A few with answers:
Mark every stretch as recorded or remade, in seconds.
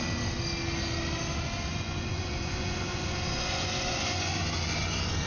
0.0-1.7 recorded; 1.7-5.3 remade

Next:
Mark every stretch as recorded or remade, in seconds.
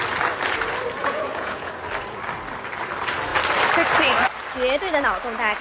0.0-1.0 recorded; 1.0-1.7 remade; 1.7-5.6 recorded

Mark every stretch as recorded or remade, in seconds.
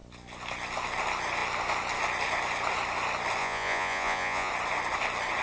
0.0-3.4 recorded; 3.4-4.5 remade; 4.5-5.4 recorded